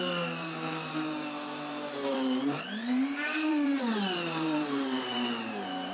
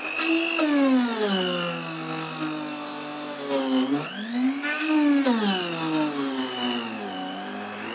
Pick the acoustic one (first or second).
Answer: second